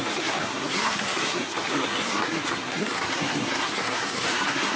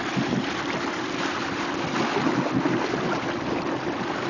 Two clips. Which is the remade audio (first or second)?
first